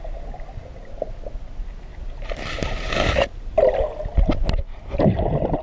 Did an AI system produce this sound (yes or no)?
no